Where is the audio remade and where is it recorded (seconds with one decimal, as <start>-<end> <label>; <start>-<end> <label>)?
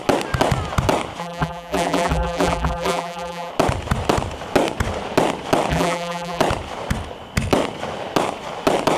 0.0-1.2 recorded; 1.2-3.5 remade; 3.5-5.7 recorded; 5.7-6.4 remade; 6.4-9.0 recorded